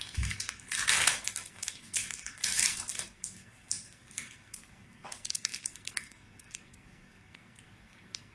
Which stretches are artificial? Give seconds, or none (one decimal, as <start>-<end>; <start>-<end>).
0.0-8.3